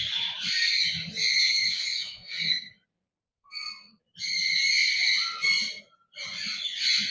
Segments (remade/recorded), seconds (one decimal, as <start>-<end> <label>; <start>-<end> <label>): 0.0-1.3 recorded; 1.3-2.7 remade; 2.7-3.2 recorded; 3.2-4.0 remade; 4.0-7.1 recorded